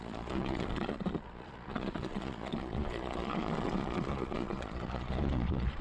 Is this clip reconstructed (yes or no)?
yes